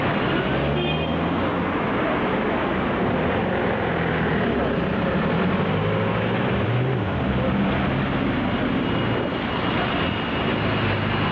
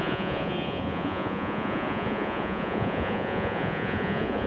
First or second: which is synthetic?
second